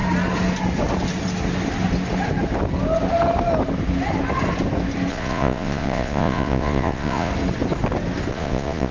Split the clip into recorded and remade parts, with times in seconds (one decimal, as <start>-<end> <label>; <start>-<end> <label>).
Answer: 0.0-5.1 recorded; 5.1-7.3 remade; 7.3-8.3 recorded; 8.3-8.9 remade